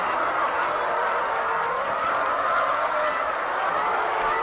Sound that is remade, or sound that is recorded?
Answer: recorded